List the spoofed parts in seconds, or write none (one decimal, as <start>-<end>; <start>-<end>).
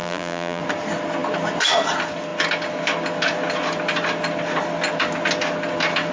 0.0-0.6